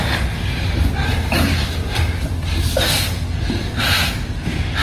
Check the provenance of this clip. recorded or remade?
recorded